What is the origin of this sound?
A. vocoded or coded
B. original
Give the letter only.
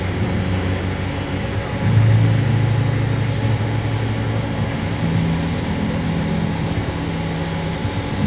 B